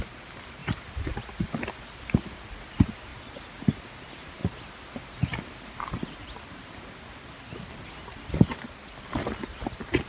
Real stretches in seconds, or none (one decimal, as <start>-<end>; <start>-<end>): 0.0-10.1